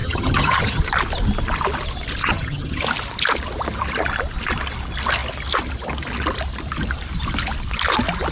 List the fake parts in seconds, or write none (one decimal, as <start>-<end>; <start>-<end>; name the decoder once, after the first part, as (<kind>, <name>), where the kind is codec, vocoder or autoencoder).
0.0-0.8 (vocoder, HiFi-GAN); 2.2-2.8